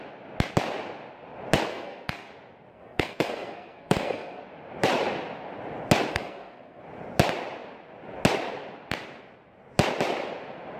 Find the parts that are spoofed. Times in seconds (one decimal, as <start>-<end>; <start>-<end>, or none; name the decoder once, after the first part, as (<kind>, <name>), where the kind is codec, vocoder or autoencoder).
1.7-2.3 (codec, SNAC); 2.7-4.4; 6.1-6.8